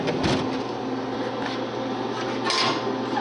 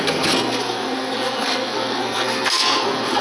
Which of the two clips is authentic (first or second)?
first